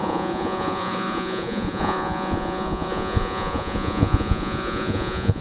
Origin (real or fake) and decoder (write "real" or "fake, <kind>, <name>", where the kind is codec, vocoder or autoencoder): fake, vocoder, Vocos